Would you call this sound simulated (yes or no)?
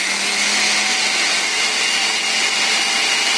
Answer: no